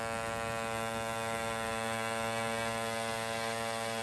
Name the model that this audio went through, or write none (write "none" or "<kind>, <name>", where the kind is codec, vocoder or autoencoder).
none